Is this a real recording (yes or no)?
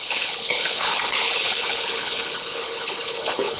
no